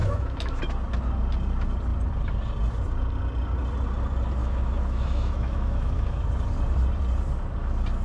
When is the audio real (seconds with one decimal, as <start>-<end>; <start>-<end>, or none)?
0.6-4.4; 6.3-8.0